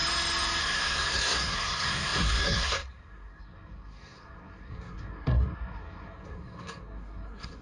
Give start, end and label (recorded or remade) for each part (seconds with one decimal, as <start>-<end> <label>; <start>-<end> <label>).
0.0-0.6 recorded; 0.6-7.6 remade